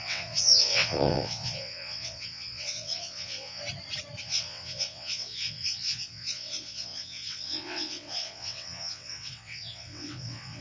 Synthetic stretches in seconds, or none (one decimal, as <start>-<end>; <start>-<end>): 0.0-3.6; 4.2-10.6